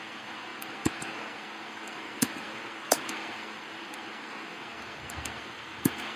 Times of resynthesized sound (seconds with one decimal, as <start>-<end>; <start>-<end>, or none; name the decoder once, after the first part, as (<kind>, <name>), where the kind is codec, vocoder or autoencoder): 0.0-6.2 (codec, SNAC)